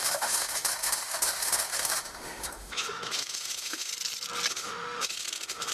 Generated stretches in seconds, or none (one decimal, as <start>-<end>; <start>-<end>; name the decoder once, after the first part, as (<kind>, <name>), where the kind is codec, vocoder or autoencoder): 0.0-3.9 (autoencoder, DAC-VAE); 4.5-5.7